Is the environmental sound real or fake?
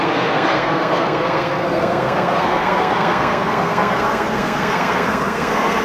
fake